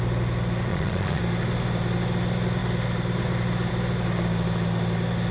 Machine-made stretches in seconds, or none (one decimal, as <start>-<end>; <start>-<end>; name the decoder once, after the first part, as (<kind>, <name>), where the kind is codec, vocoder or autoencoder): 0.7-1.2 (vocoder, Vocos)